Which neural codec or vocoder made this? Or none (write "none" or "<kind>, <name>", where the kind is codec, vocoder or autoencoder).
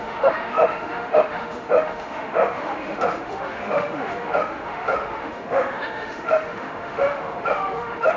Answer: autoencoder, DAC-VAE